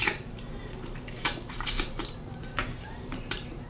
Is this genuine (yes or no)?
no